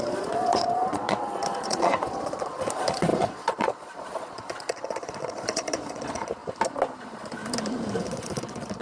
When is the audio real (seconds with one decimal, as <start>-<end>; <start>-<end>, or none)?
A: 6.4-7.0; 7.4-8.0